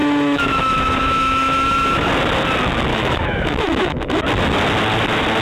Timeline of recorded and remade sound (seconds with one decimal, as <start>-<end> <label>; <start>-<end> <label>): 0.0-2.1 remade; 2.1-2.9 recorded; 2.9-4.2 remade; 4.2-5.4 recorded